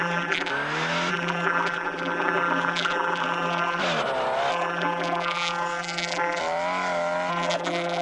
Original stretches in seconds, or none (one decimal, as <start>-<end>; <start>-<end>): 0.5-1.1; 3.8-4.5; 6.4-7.3